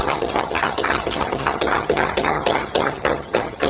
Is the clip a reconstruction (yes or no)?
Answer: yes